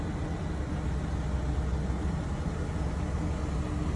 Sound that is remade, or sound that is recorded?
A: recorded